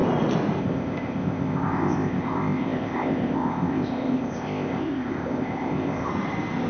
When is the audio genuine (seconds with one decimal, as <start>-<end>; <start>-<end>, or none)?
0.0-0.6; 6.1-6.7